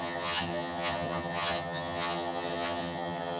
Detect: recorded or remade remade